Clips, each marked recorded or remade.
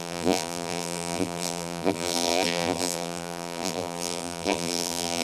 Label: remade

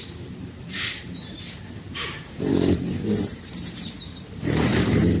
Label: remade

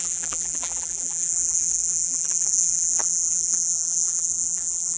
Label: remade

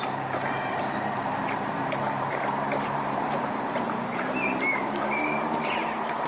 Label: remade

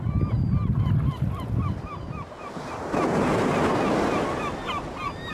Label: recorded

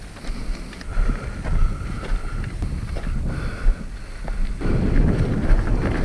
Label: recorded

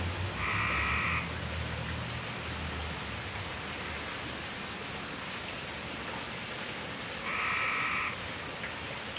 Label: recorded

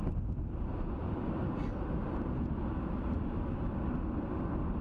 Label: recorded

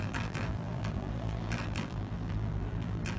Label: remade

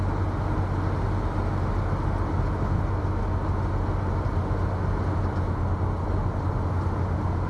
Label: recorded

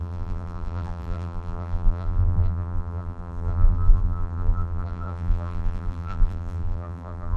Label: remade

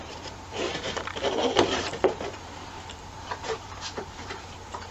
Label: remade